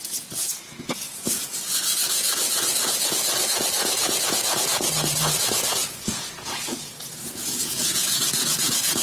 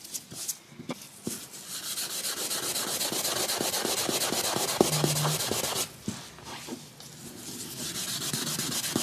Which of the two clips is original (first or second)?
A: second